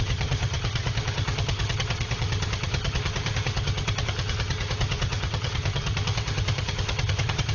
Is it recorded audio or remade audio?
remade